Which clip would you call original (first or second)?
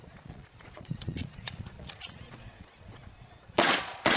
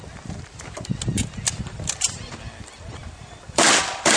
second